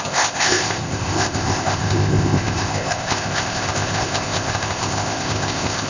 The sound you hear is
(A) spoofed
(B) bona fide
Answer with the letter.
A